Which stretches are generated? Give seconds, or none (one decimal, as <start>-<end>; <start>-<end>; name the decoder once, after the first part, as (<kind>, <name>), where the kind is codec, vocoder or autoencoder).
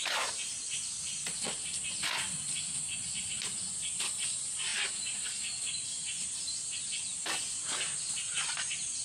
none